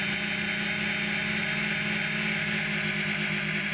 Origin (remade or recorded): recorded